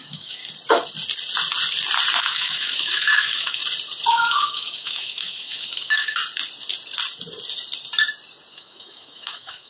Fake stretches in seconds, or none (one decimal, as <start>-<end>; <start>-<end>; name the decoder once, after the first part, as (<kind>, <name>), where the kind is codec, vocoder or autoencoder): 0.0-0.4 (autoencoder, DAC-VAE); 2.2-3.6; 4.1-6.2; 8.5-9.7